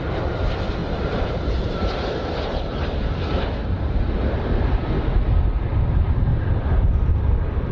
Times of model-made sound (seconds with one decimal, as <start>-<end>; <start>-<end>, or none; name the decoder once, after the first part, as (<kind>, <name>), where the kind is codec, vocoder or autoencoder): 0.8-4.7 (vocoder, BigVGAN v2); 6.3-6.9